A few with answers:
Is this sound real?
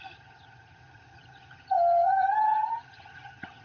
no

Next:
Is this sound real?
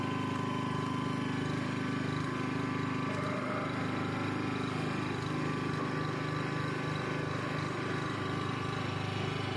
yes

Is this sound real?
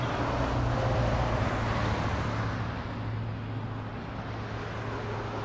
yes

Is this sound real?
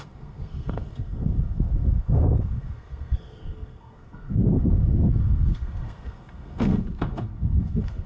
no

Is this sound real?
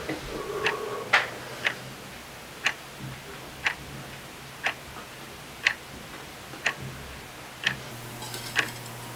yes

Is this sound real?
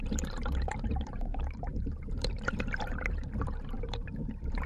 no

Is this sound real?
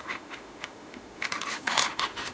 no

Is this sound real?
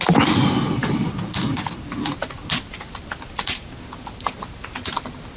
yes